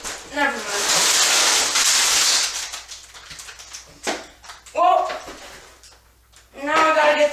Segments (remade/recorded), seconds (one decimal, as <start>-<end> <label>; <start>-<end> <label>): 0.0-7.3 recorded